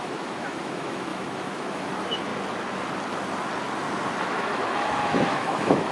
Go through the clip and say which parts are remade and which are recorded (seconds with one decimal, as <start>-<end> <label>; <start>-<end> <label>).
0.0-2.3 remade; 2.3-4.2 recorded; 4.2-5.9 remade